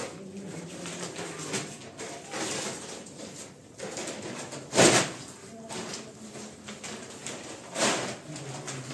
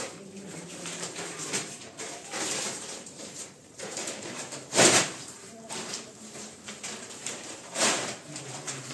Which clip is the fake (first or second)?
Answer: second